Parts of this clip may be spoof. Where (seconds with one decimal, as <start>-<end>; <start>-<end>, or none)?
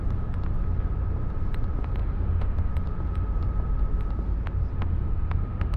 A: 2.0-2.7; 4.7-5.8